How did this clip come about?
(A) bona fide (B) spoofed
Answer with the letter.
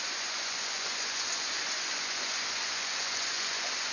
B